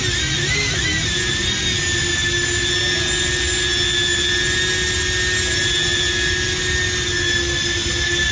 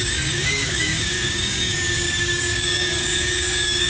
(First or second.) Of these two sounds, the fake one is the second